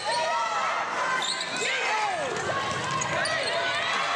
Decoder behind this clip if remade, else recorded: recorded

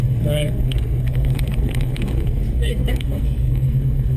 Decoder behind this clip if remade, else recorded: remade, codec, SNAC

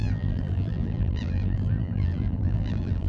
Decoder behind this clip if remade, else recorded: remade, vocoder, BigVGAN v2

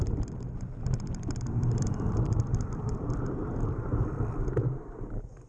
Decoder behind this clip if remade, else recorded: remade, vocoder, BigVGAN v2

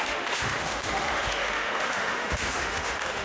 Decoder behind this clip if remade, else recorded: remade, autoencoder, DAC-VAE